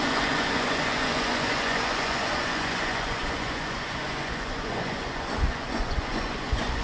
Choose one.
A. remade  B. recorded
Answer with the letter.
A